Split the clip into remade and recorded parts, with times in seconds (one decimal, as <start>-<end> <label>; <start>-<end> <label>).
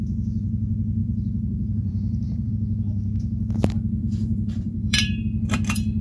0.0-1.0 recorded; 1.0-2.5 remade; 2.5-4.0 recorded; 4.0-5.2 remade; 5.2-6.0 recorded